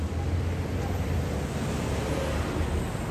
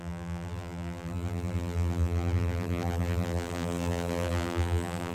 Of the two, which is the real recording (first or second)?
first